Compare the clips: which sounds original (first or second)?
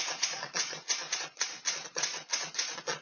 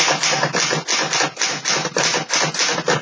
second